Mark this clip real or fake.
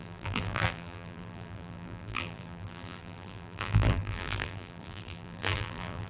fake